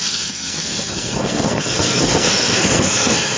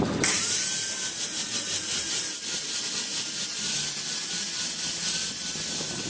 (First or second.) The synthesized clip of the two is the first